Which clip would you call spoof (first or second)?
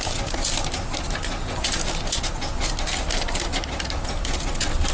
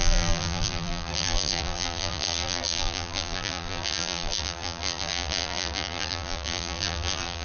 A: second